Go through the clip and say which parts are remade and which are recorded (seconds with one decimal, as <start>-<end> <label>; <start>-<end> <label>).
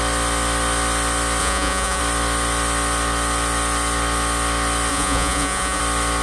0.0-1.4 recorded; 1.4-2.0 remade; 2.0-4.9 recorded; 4.9-5.8 remade; 5.8-6.2 recorded